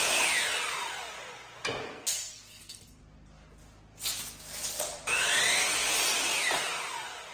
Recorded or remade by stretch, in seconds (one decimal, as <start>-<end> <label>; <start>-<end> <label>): 0.0-1.8 recorded; 1.8-3.0 remade; 3.0-7.3 recorded